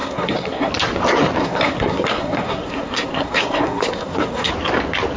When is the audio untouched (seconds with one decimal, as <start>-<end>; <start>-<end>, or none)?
0.7-1.4; 4.5-5.2